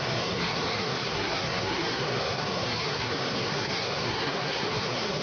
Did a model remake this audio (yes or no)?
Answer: yes